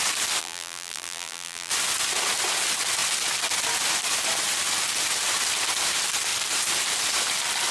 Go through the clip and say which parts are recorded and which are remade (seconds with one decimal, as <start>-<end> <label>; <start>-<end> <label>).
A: 0.0-0.4 recorded; 0.4-1.7 remade; 1.7-7.7 recorded